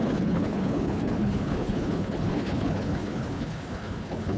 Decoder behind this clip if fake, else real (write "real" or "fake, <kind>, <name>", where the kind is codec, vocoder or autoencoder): fake, codec, HILCodec